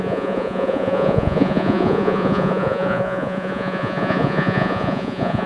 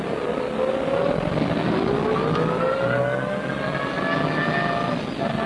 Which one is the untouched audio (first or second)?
second